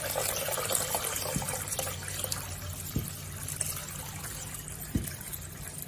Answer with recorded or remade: recorded